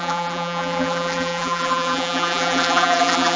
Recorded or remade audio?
remade